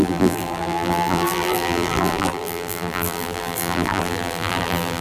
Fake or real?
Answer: fake